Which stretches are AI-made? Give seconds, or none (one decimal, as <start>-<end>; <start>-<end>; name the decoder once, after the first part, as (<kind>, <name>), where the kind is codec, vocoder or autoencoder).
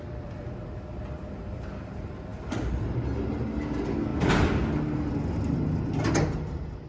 none